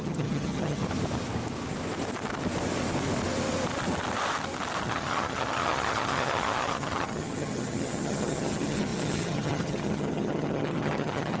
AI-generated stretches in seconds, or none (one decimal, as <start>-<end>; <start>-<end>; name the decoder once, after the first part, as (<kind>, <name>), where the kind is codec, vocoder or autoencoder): 0.0-0.8 (vocoder, HiFi-GAN); 4.8-11.4